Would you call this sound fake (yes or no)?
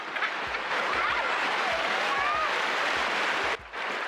no